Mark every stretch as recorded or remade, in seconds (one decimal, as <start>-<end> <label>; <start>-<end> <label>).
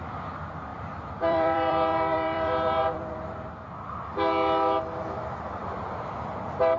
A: 0.0-0.7 recorded; 0.7-3.5 remade; 3.5-5.6 recorded; 5.6-6.8 remade